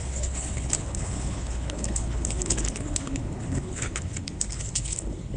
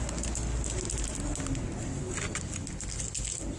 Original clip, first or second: second